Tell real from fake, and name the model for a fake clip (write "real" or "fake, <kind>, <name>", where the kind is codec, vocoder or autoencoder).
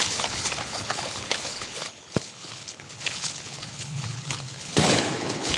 fake, codec, HILCodec